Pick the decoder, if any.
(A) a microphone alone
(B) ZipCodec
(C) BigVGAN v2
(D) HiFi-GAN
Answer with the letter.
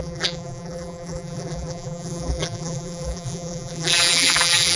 C